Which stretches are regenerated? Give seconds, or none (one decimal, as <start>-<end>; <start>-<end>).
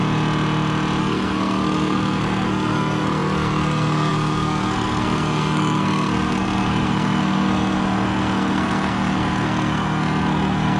1.0-10.8